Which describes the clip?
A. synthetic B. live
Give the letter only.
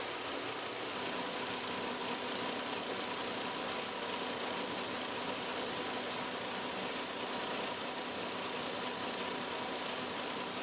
B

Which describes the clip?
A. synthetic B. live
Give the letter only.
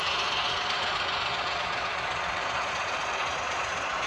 A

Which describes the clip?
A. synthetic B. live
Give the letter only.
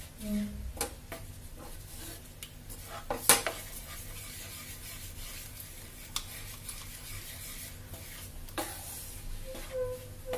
B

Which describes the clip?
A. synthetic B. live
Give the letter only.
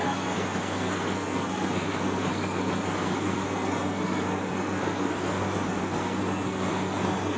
A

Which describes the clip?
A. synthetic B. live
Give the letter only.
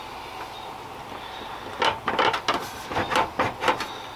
B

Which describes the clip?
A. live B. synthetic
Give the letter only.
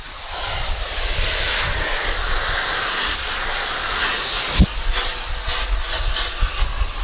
A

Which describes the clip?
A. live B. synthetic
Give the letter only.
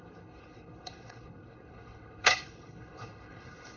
B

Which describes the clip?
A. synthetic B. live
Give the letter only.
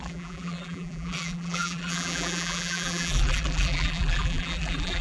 A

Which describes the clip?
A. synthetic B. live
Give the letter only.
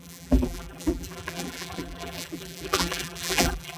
A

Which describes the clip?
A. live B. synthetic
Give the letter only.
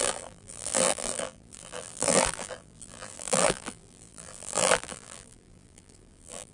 B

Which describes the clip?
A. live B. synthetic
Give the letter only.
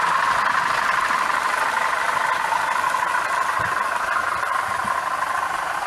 A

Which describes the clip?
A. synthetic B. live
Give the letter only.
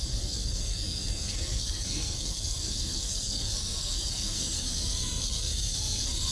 A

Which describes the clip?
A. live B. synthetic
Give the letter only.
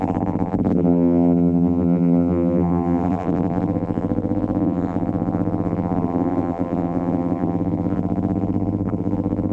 B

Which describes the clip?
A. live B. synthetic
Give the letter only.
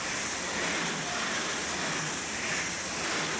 A